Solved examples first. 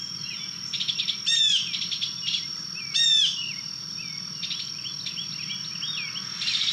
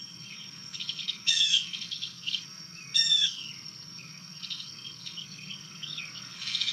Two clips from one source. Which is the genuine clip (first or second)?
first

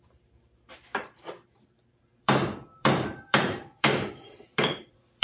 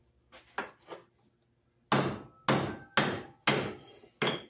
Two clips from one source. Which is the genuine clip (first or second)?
second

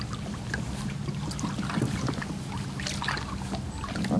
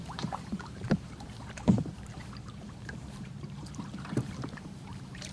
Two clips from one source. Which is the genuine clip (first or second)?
first